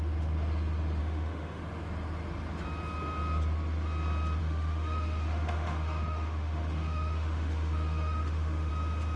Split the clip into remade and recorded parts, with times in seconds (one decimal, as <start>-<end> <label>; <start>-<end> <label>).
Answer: 0.0-1.0 recorded; 1.0-1.6 remade; 1.6-4.4 recorded; 4.4-8.7 remade; 8.7-9.2 recorded